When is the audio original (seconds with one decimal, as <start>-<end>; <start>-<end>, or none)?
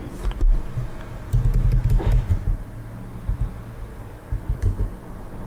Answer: 0.0-3.9; 5.0-5.5